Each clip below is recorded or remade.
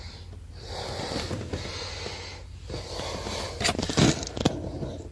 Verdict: recorded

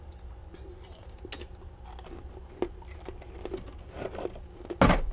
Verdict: recorded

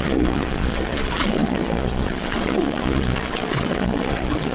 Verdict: remade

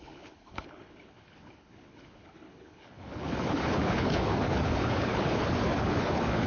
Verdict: remade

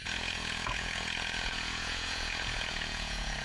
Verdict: remade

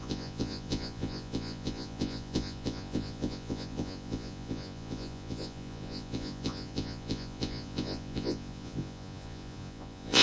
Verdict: remade